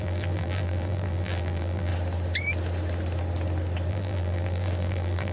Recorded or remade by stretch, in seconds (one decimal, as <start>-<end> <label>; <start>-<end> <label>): 0.0-1.9 remade; 1.9-3.9 recorded; 3.9-5.3 remade